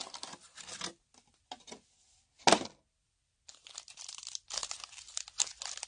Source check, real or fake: real